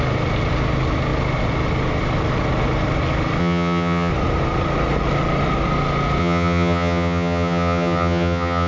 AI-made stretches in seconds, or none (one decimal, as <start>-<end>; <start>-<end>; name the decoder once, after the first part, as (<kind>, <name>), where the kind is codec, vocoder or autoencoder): 3.4-4.1 (vocoder, HiFi-GAN); 6.2-8.7